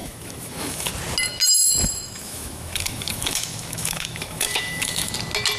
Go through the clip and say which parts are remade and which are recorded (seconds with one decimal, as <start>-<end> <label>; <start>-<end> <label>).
0.0-0.9 remade; 0.9-1.7 recorded; 1.7-5.1 remade; 5.1-5.6 recorded